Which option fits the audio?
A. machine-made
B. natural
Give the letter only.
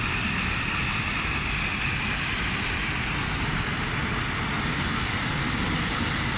B